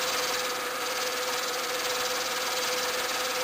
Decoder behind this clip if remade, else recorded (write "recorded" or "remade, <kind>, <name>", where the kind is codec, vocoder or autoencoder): recorded